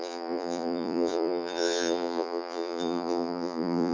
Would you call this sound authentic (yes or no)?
no